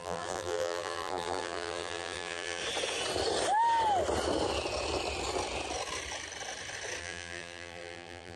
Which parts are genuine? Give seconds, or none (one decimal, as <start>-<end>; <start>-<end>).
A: 2.6-7.0